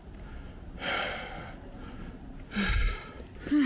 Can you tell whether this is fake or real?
real